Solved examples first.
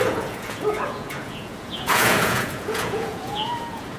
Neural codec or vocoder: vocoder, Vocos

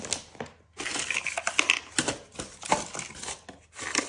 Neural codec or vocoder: none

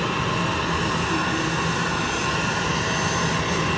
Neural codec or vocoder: none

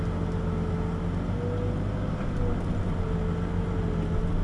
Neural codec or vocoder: none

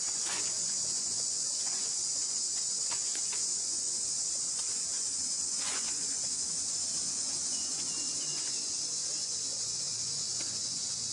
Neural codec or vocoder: vocoder, Vocos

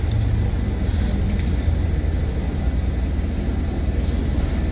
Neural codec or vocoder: none